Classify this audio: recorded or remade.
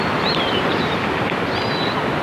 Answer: recorded